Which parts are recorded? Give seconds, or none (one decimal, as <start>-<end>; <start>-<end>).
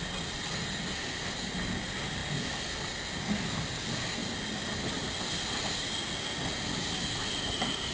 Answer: 0.0-7.9